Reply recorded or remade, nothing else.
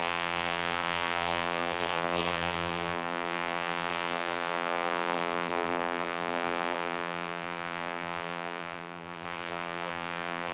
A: remade